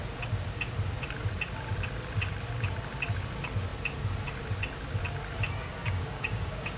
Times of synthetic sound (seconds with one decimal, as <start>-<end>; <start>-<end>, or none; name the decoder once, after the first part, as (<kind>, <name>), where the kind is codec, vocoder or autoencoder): 5.7-6.8 (codec, DAC)